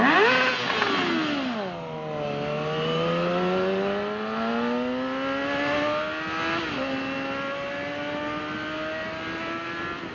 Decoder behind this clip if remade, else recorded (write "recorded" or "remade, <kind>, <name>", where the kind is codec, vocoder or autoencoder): recorded